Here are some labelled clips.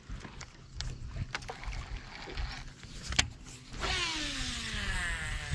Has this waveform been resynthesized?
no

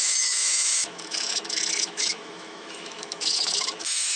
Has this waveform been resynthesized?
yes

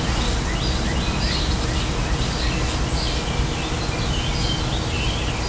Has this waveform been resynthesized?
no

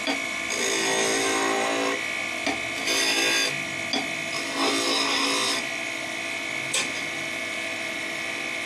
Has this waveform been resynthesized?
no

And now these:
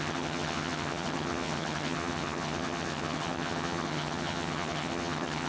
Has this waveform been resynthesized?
yes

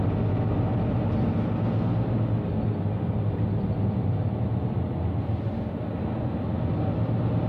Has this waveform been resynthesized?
no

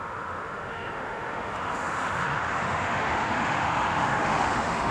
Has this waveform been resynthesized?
yes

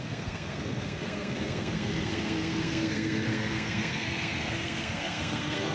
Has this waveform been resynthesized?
yes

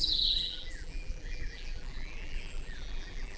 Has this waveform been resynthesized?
yes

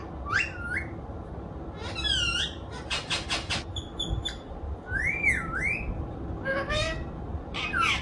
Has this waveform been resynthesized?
no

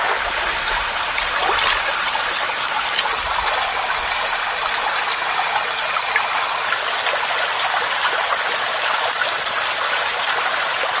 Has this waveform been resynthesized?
no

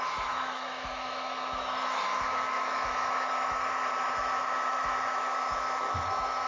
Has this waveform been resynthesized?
yes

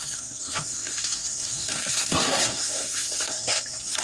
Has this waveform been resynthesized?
yes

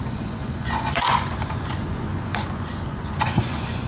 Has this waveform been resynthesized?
yes